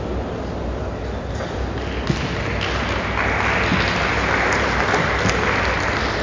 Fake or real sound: real